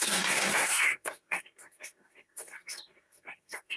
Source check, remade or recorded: remade